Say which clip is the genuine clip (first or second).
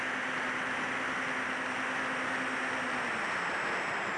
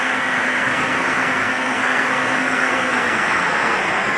first